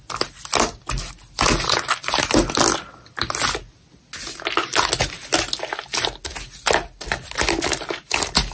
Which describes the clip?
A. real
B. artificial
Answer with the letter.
A